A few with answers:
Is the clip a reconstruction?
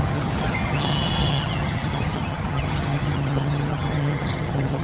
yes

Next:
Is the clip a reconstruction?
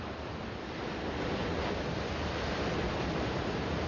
no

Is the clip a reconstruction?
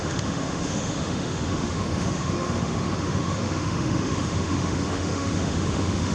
yes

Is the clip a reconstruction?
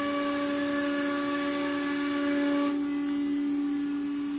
no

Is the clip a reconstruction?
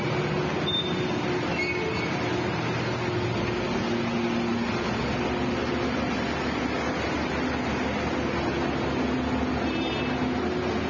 no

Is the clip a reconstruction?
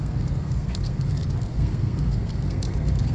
yes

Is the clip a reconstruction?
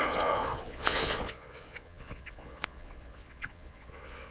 yes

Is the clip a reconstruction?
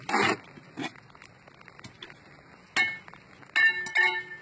no